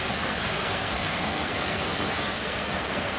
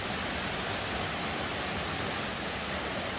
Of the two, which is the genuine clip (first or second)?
second